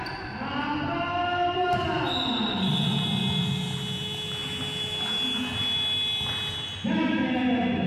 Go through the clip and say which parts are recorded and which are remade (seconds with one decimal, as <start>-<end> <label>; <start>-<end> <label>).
0.0-7.9 recorded